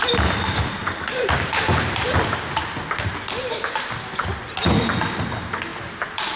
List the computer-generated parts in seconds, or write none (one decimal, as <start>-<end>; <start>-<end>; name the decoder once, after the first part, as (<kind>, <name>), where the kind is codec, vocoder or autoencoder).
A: 0.8-2.8 (vocoder, BigVGAN v2); 5.7-6.4